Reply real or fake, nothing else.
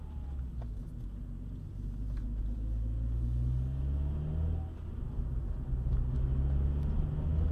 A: real